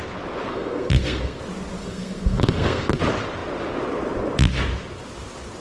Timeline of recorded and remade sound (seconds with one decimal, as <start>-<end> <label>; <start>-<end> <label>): 0.0-0.5 recorded; 0.5-1.4 remade; 1.4-1.8 recorded; 1.8-3.0 remade; 3.0-5.6 recorded